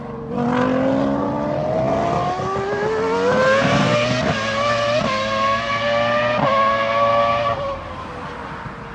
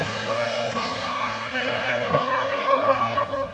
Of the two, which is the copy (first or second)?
second